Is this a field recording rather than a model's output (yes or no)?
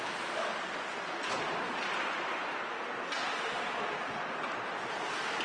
yes